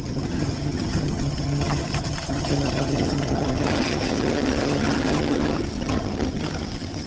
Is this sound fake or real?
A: fake